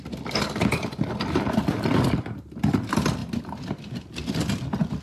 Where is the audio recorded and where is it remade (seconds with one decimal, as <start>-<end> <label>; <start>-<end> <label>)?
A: 0.0-5.0 recorded